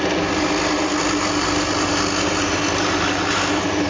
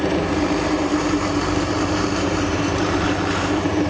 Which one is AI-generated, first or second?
second